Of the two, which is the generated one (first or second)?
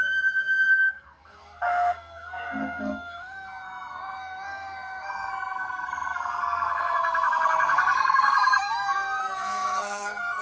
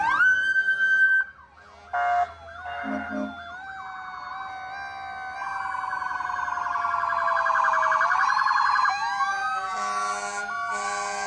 first